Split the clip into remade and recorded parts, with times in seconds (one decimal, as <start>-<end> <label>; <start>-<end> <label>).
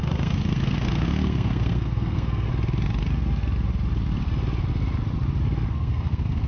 0.0-2.5 remade; 2.5-5.7 recorded; 5.7-6.5 remade